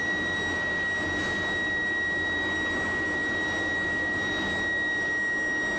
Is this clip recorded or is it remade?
recorded